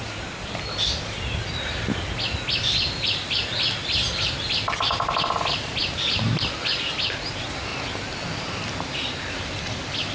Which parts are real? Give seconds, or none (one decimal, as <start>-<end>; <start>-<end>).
0.0-10.1